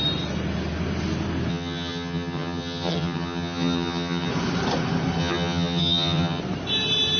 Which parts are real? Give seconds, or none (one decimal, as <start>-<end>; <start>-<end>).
0.0-1.5; 4.3-5.2; 6.4-7.2